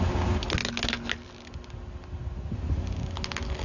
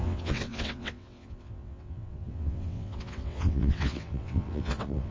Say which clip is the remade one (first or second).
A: second